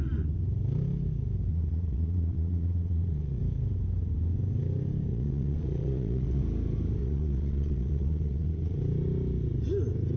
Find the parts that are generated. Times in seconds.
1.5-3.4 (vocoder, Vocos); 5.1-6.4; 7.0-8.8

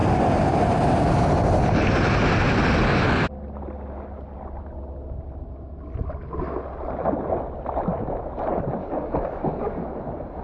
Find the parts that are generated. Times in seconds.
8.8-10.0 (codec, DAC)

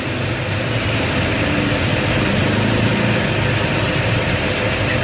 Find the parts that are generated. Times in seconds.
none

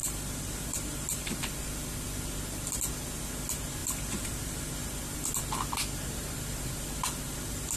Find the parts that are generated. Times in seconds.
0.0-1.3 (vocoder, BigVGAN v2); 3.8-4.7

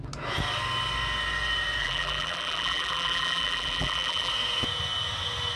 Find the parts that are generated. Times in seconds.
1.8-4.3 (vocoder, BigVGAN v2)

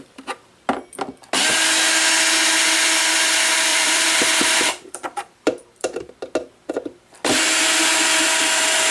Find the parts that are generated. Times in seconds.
3.7-6.1 (vocoder, BigVGAN v2)

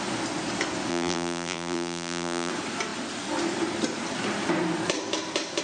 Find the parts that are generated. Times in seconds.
0.9-2.5 (vocoder, BigVGAN v2)